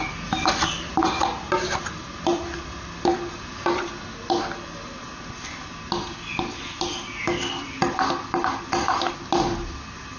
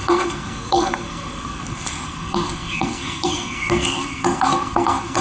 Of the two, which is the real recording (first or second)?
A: first